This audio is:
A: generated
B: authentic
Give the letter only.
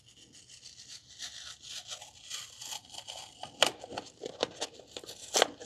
B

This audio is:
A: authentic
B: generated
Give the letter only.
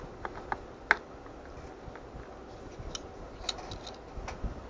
A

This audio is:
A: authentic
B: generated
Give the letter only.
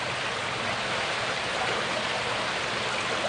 A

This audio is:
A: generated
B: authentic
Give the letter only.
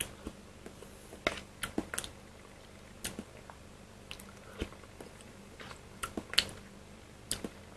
B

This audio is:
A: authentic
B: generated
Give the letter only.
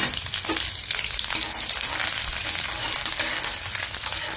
A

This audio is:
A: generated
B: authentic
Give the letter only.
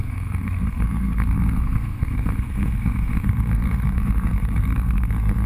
A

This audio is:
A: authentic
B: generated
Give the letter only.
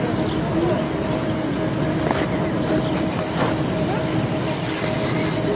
A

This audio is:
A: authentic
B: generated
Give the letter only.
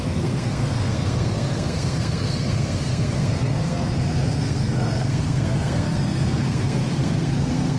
B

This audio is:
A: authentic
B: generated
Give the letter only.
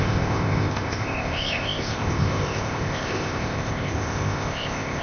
B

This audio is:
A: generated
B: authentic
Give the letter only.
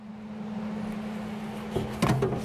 B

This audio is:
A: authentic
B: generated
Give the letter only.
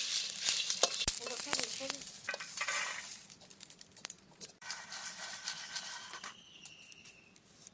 B